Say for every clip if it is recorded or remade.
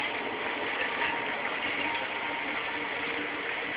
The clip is recorded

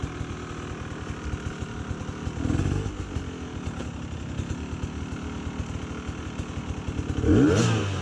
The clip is recorded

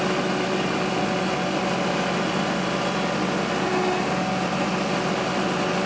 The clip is recorded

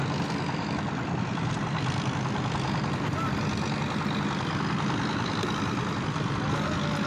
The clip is recorded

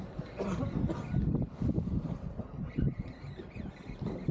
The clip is recorded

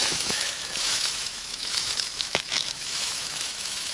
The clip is remade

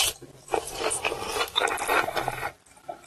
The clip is recorded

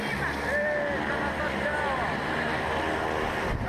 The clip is recorded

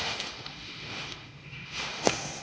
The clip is remade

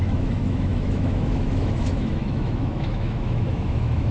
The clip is remade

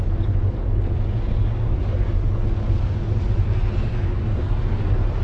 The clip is recorded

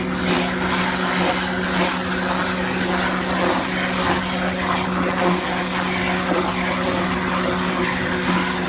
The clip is recorded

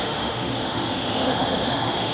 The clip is remade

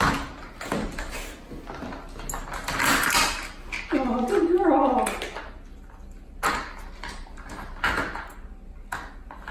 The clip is recorded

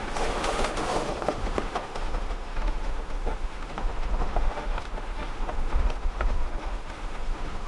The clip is remade